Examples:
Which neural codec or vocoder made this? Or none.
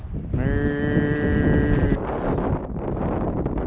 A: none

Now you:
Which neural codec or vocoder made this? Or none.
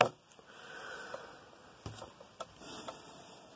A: none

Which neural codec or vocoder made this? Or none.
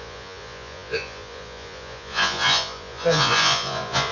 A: vocoder, Vocos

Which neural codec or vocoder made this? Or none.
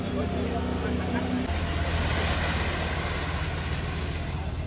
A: none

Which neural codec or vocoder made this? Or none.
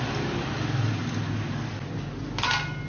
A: none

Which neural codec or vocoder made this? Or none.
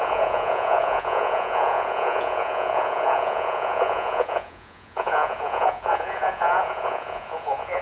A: vocoder, Vocos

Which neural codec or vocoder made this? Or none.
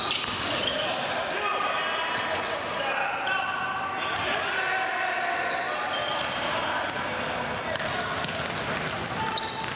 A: none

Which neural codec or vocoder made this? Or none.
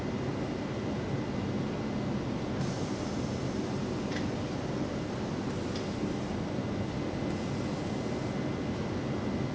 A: none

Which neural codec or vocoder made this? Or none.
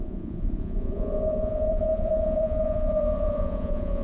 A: vocoder, Vocos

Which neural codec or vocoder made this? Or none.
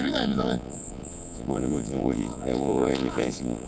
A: vocoder, Vocos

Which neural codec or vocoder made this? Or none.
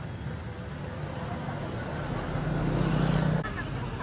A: none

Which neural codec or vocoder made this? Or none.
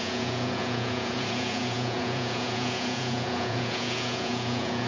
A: vocoder, Vocos